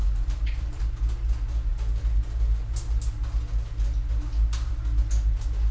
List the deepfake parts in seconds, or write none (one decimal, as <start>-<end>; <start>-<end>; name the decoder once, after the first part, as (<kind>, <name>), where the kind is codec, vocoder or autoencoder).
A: 0.0-1.0 (vocoder, BigVGAN v2)